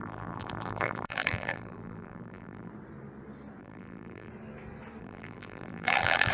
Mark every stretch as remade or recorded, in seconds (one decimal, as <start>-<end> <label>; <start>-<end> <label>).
0.0-2.7 remade; 2.7-3.6 recorded; 3.6-4.3 remade; 4.3-5.0 recorded; 5.0-6.3 remade